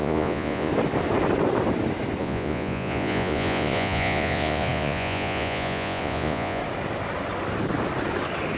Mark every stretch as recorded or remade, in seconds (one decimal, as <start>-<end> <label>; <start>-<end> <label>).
0.0-0.7 remade; 0.7-2.2 recorded; 2.2-6.6 remade; 6.6-8.6 recorded